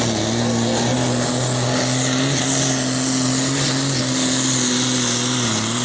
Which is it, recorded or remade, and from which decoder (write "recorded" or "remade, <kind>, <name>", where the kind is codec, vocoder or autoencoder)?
recorded